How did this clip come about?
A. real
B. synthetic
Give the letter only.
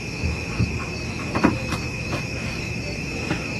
B